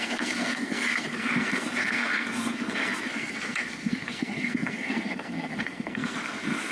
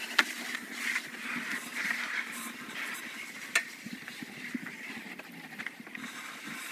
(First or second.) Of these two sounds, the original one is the second